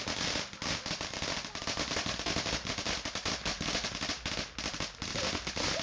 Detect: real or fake real